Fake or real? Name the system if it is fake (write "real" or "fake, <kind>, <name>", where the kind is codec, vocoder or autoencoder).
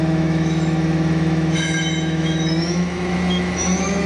fake, autoencoder, DAC-VAE